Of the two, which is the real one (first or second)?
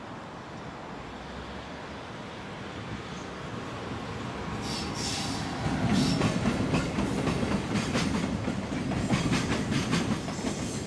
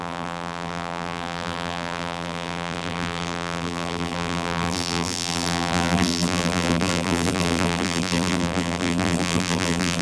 first